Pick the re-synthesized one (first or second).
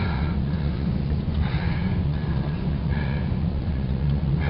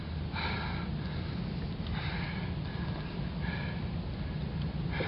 first